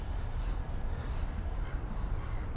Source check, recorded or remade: recorded